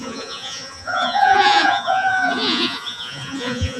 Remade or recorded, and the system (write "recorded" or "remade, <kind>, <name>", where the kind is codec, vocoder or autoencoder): remade, vocoder, Vocos